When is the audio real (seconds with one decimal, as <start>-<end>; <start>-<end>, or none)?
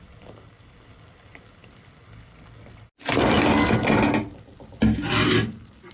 0.0-5.9